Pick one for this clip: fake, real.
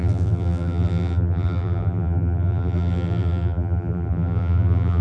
fake